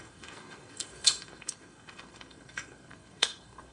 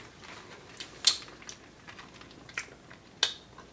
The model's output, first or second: first